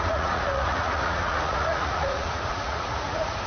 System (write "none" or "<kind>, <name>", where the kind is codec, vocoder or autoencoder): vocoder, Vocos